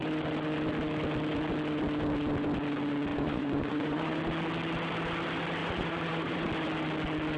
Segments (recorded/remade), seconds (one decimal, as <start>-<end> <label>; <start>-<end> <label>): 0.0-3.1 recorded; 3.1-4.2 remade; 4.2-5.6 recorded; 5.6-6.5 remade; 6.5-7.4 recorded

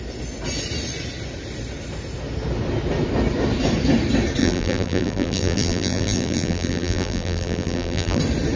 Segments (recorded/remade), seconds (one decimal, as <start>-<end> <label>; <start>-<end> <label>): 0.0-4.4 recorded; 4.4-8.2 remade; 8.2-8.6 recorded

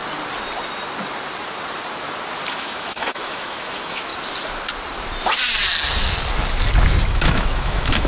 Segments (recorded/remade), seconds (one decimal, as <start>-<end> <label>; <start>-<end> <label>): 0.0-2.5 recorded; 2.5-4.1 remade; 4.1-7.1 recorded; 7.1-8.1 remade